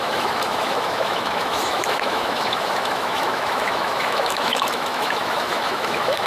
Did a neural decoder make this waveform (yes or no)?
yes